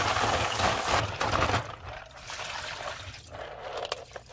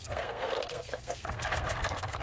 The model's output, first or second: second